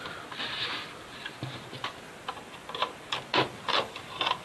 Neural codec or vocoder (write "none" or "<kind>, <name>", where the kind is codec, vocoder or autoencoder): none